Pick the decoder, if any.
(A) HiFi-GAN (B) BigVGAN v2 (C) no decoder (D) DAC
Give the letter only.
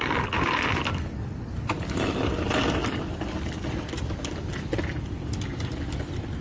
C